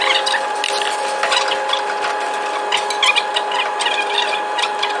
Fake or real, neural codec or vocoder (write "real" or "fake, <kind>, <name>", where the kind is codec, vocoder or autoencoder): real